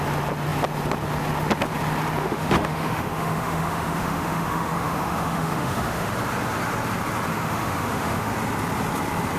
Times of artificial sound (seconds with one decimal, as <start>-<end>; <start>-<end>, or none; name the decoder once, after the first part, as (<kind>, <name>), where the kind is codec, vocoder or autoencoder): 2.2-6.1 (autoencoder, DAC-VAE); 7.3-8.3